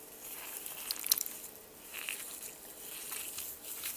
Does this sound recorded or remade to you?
recorded